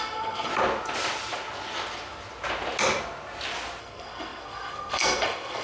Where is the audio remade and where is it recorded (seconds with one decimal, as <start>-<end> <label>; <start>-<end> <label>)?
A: 0.0-0.5 remade; 0.5-3.8 recorded; 3.8-5.6 remade